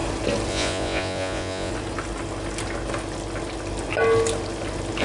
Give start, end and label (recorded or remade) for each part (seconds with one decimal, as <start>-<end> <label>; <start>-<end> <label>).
0.0-0.5 recorded; 0.5-1.7 remade; 1.7-5.0 recorded